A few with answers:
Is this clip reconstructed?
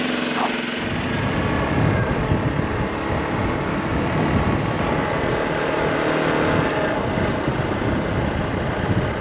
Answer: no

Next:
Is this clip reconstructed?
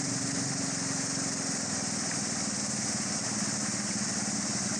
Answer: no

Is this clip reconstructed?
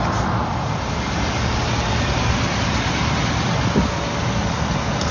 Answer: no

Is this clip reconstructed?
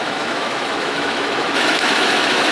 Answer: yes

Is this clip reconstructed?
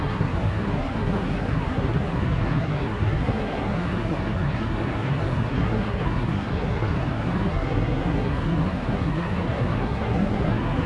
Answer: yes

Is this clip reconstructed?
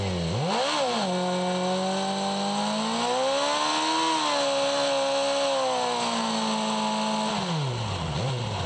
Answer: no